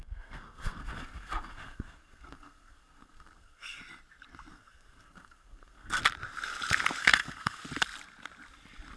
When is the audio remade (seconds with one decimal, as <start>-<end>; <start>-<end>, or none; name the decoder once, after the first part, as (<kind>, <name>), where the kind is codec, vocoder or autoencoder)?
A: 0.0-3.8 (codec, SNAC); 4.5-6.0; 7.0-7.6